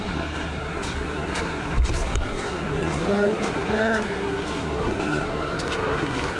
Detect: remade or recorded remade